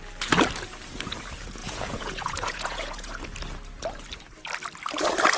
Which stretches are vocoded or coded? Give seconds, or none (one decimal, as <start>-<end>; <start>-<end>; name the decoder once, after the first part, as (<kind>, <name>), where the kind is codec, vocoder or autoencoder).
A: 1.6-3.2 (vocoder, Vocos)